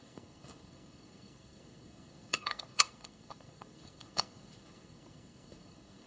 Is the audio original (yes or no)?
no